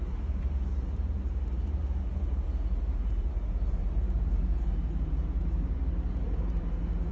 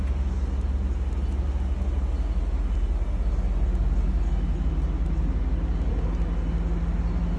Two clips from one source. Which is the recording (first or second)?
second